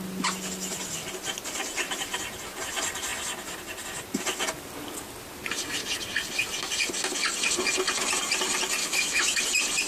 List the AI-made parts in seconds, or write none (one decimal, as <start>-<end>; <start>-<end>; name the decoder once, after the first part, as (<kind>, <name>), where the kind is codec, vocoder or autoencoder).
8.8-9.4 (autoencoder, DAC-VAE)